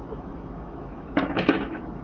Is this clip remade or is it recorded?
remade